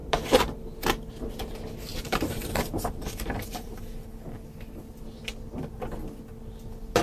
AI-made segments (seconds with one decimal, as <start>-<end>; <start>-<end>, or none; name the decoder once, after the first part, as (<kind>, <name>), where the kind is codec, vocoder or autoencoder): 1.9-3.9 (vocoder, BigVGAN v2)